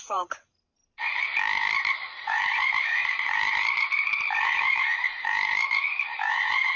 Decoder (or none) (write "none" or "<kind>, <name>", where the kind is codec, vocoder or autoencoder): vocoder, BigVGAN v2